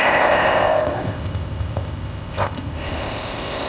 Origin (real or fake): fake